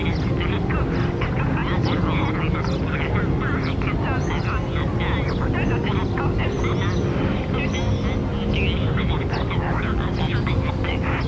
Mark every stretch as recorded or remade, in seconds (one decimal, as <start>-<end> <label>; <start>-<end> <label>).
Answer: 0.0-11.3 recorded